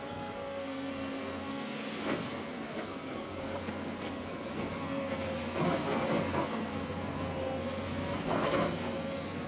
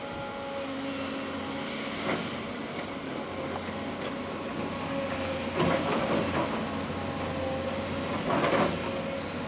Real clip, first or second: second